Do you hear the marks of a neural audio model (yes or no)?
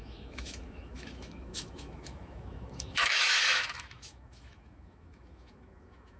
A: yes